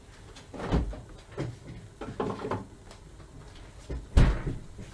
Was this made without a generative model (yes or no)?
yes